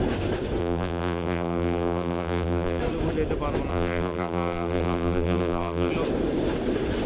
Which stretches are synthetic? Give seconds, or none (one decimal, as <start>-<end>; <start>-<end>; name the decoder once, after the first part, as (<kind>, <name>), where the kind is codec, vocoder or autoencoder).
0.6-2.8 (vocoder, BigVGAN v2); 3.7-5.9